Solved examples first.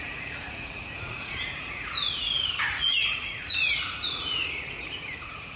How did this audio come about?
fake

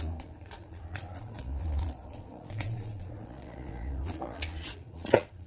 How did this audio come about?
fake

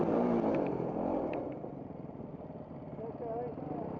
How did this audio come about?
real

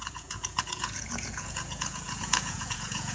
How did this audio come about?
fake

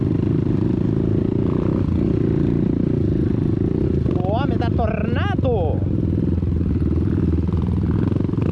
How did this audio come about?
real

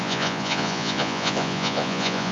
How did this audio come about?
fake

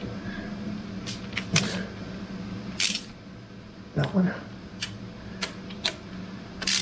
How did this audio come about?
real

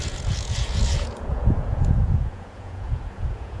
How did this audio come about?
fake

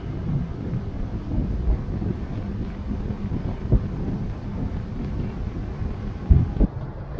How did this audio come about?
real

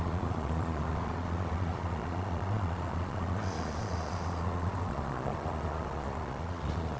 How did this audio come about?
fake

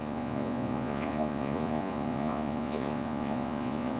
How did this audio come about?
fake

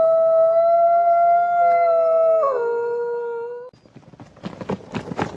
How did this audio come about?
real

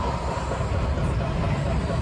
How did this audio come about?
real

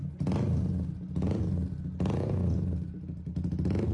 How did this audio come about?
real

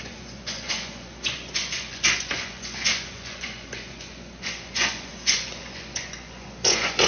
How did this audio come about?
fake